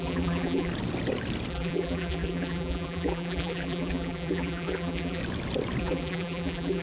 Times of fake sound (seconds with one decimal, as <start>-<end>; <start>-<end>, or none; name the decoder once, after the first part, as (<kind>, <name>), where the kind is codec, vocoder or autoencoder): 0.0-0.7 (vocoder, BigVGAN v2); 1.5-5.2; 5.8-6.8